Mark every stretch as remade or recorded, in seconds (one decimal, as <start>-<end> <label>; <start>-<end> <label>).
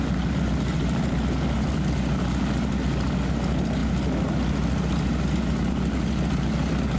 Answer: 0.0-7.0 recorded